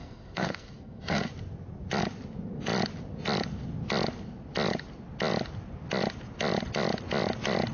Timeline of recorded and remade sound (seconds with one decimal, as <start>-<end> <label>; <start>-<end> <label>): 0.0-1.3 remade; 1.3-7.7 recorded